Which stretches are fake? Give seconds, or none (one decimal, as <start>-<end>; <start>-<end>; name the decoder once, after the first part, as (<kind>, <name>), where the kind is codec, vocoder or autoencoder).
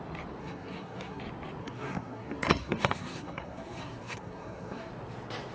0.4-1.2 (codec, SNAC); 1.6-4.9